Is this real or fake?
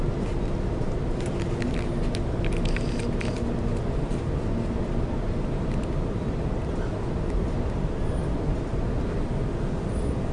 real